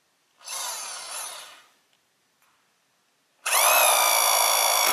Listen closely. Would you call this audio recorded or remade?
recorded